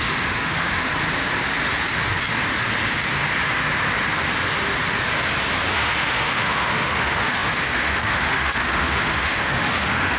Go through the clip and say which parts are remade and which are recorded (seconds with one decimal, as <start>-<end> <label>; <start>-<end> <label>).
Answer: 0.0-0.9 remade; 0.9-5.7 recorded; 5.7-10.2 remade